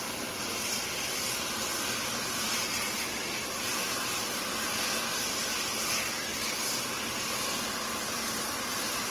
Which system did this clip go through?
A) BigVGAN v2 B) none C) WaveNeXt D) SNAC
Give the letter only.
B